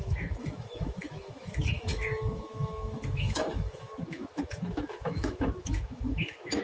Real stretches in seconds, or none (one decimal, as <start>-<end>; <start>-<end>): none